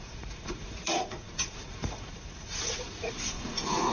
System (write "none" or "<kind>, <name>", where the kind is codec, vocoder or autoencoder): vocoder, Vocos